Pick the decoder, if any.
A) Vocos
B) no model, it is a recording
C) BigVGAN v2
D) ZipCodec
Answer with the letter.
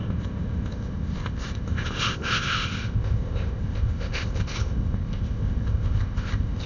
D